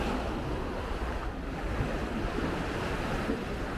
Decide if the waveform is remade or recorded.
recorded